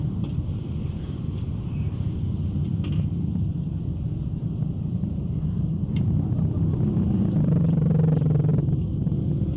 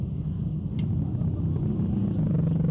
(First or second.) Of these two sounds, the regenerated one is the first